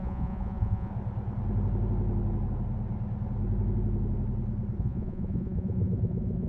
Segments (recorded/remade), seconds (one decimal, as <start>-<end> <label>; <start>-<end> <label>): 0.0-0.9 remade; 0.9-4.8 recorded; 4.8-6.5 remade